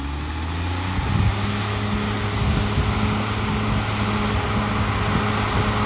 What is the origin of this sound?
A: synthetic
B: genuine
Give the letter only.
B